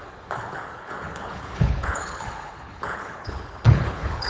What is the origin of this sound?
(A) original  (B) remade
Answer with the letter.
B